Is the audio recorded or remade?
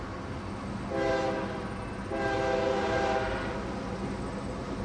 recorded